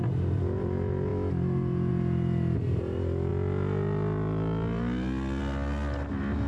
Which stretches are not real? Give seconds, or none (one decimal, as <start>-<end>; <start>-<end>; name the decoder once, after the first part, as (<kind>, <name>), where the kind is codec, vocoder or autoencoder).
none